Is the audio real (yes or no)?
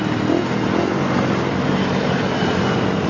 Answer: yes